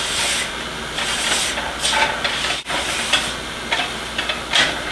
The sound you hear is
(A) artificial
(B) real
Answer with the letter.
B